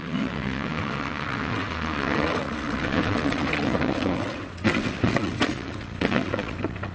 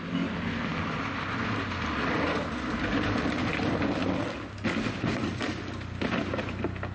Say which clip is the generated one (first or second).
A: first